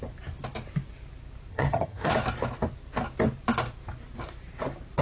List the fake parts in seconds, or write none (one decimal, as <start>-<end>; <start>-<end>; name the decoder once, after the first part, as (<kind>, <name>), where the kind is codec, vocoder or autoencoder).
1.5-2.1 (vocoder, HiFi-GAN)